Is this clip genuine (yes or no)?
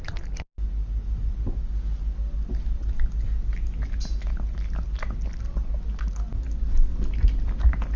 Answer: yes